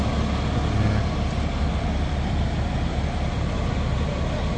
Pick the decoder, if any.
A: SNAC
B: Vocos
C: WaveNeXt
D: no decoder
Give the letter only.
D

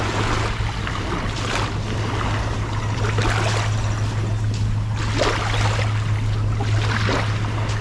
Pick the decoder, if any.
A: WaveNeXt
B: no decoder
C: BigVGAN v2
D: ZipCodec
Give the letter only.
B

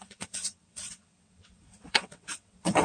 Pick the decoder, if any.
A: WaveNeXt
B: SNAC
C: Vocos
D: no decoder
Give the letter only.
A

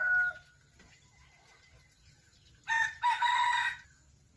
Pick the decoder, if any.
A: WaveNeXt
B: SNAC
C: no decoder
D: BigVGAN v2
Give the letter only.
C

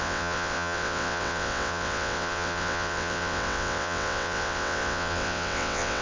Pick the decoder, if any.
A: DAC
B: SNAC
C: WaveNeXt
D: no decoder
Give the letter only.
C